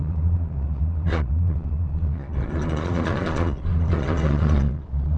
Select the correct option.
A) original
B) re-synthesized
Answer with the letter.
B